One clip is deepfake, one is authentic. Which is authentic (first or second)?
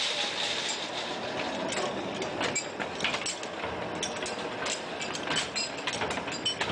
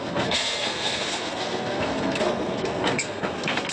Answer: first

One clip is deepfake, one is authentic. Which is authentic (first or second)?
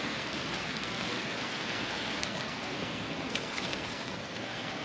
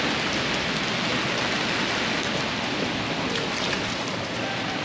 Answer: second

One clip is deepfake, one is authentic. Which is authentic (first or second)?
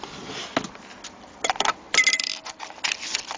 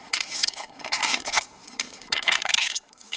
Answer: first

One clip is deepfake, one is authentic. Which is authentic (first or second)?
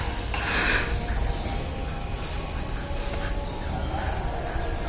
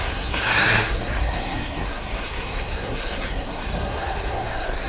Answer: first